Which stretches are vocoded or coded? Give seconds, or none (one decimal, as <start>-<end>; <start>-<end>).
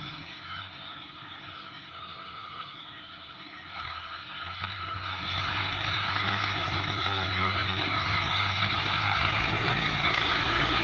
0.0-10.8